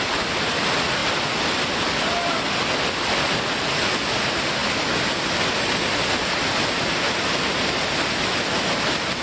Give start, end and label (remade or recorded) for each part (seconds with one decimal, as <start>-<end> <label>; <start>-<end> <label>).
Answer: 0.0-9.2 recorded

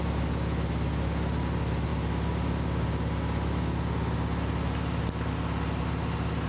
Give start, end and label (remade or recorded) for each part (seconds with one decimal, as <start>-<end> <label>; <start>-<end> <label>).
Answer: 0.0-6.5 recorded

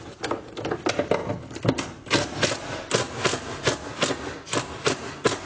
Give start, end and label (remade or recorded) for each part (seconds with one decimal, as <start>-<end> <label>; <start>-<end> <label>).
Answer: 0.0-5.5 recorded

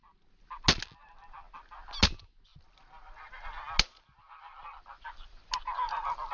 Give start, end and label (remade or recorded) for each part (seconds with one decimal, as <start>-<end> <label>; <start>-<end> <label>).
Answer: 0.0-6.3 recorded

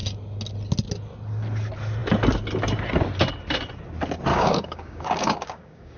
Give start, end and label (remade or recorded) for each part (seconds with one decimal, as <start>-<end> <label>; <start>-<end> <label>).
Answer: 0.0-4.3 recorded; 4.3-6.0 remade

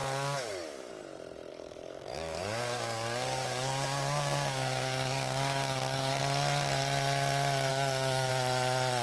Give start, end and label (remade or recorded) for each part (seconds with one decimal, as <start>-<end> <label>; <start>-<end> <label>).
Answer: 0.0-0.9 remade; 0.9-1.5 recorded; 1.5-6.2 remade; 6.2-7.7 recorded; 7.7-8.3 remade; 8.3-9.0 recorded

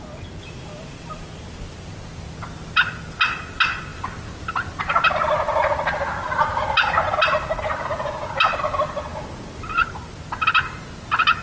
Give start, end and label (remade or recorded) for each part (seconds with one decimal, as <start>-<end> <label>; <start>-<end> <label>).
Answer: 0.0-11.4 recorded

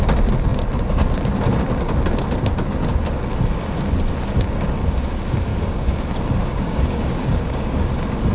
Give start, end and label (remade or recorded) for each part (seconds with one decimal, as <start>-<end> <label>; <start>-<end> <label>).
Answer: 0.0-5.5 recorded; 5.5-6.0 remade; 6.0-6.4 recorded; 6.4-7.8 remade; 7.8-8.3 recorded